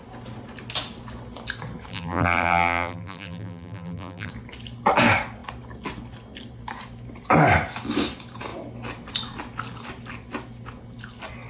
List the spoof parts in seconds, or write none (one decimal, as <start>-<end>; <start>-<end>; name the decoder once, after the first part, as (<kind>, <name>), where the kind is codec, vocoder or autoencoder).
1.9-4.3 (vocoder, BigVGAN v2)